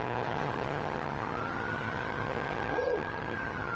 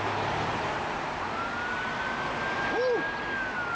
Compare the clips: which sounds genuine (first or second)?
second